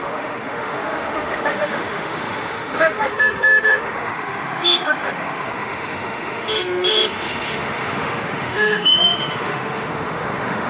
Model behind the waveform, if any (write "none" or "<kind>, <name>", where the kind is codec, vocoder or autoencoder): autoencoder, DAC-VAE